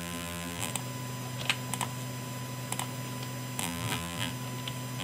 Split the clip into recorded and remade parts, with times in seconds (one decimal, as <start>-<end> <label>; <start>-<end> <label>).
0.0-0.7 remade; 0.7-3.6 recorded; 3.6-4.3 remade; 4.3-5.0 recorded